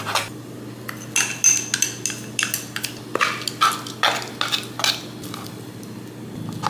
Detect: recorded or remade recorded